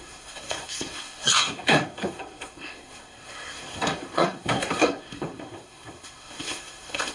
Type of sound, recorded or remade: remade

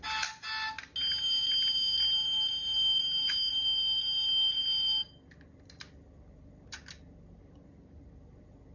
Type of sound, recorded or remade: recorded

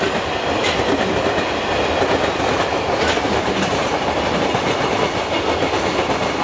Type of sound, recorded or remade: recorded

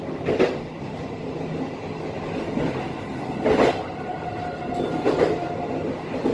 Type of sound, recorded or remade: recorded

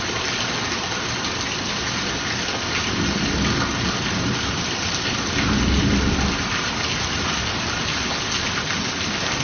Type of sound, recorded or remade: recorded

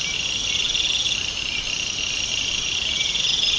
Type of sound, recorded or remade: recorded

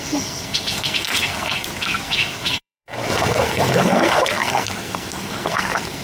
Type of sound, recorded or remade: remade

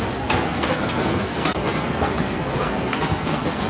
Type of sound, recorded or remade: remade